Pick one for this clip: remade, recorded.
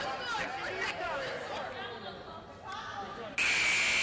recorded